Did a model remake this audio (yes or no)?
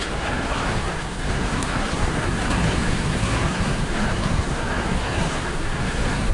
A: yes